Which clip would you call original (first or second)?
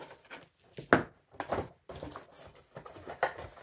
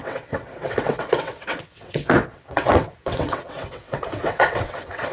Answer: first